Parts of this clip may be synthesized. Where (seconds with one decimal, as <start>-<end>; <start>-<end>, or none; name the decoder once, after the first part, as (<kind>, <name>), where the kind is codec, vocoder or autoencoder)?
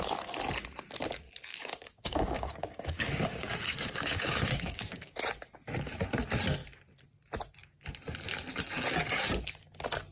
1.5-5.2 (codec, DAC)